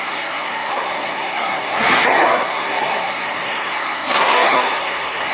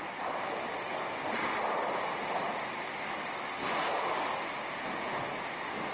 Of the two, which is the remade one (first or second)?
first